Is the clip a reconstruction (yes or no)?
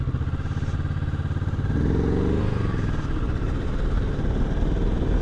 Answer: no